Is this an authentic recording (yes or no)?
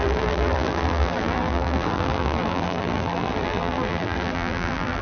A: no